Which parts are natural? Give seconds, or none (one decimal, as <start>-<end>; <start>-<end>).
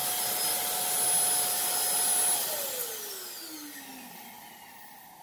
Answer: 0.0-3.9